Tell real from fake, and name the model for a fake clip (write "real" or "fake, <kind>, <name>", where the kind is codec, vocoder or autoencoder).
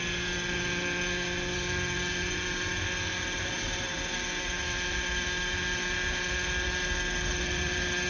real